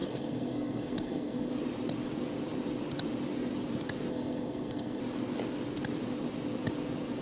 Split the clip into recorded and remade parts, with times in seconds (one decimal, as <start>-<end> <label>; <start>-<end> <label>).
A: 0.0-1.5 remade; 1.5-4.1 recorded; 4.1-5.0 remade; 5.0-7.2 recorded